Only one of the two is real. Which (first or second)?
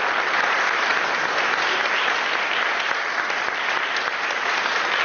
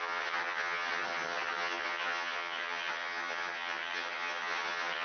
first